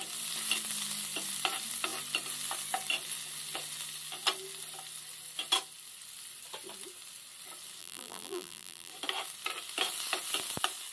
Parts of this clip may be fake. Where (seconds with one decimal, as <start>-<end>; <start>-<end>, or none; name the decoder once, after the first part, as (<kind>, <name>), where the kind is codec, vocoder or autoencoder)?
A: 7.8-8.9 (vocoder, BigVGAN v2)

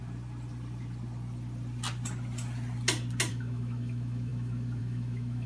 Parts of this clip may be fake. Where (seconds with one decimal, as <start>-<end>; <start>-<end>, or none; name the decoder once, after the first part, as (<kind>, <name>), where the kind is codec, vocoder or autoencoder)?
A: 3.3-5.5 (autoencoder, DAC-VAE)

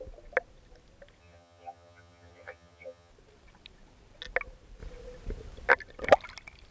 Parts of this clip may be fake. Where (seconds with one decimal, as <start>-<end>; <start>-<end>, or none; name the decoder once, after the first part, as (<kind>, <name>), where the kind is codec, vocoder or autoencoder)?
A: 1.2-3.1 (vocoder, HiFi-GAN)

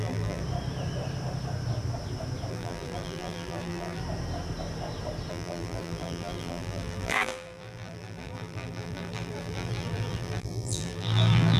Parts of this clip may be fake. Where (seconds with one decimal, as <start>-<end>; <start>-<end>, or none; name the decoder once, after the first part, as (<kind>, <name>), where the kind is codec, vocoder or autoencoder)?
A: 0.0-0.4 (vocoder, BigVGAN v2); 2.5-4.0; 5.3-11.6